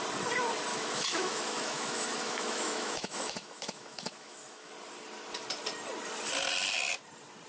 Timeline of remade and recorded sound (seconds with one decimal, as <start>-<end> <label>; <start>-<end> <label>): 0.0-0.7 recorded; 0.7-4.7 remade; 4.7-7.5 recorded